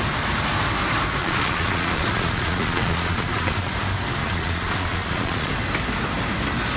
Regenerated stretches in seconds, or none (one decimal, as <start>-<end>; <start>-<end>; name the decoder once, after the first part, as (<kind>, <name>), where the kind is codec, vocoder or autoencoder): 1.2-3.7 (vocoder, Vocos); 4.2-5.5